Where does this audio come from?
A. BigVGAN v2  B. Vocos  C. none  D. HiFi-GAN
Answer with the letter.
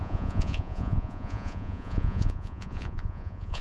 B